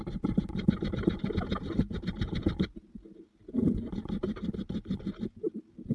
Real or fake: real